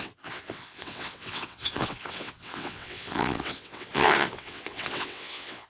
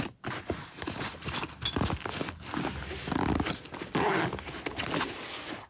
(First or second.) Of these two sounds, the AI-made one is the first